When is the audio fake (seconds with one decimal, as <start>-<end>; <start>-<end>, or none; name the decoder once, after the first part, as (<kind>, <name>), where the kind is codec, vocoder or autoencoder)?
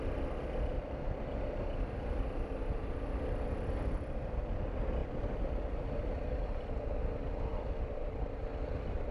none